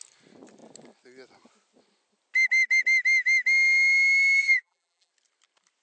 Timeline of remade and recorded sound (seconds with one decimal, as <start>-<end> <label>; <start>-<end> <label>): 0.0-4.4 recorded; 4.4-5.1 remade; 5.1-5.8 recorded